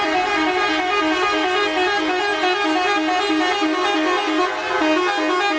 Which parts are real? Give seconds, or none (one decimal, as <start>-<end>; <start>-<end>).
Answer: 0.0-5.6